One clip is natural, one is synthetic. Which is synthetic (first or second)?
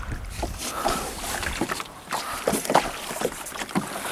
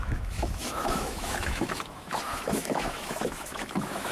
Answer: second